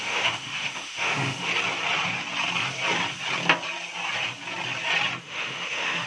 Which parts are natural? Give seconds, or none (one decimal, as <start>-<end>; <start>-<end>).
1.5-5.2